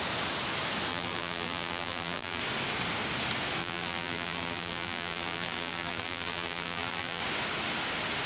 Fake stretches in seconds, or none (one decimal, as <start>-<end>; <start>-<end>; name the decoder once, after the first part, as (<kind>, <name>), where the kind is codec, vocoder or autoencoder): 0.9-2.4 (vocoder, BigVGAN v2); 3.6-7.2